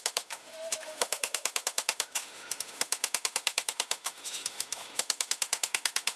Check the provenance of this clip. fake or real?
fake